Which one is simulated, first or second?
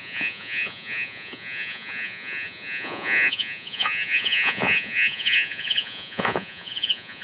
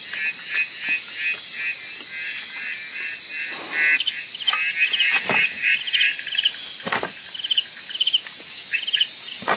first